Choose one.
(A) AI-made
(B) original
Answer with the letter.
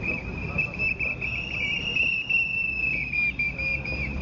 A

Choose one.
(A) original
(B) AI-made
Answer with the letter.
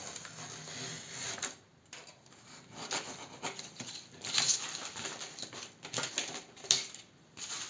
A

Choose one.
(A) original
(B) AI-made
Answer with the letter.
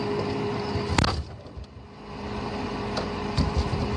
A